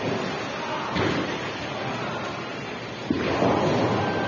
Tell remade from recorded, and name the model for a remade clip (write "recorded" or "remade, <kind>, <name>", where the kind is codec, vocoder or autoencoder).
recorded